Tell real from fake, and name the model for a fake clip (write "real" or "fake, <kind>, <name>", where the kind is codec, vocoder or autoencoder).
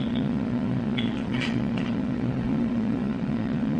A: fake, vocoder, Vocos